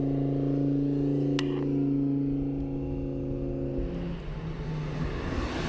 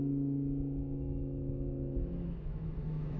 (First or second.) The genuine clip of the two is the first